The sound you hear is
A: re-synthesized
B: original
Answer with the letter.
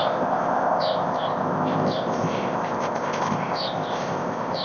A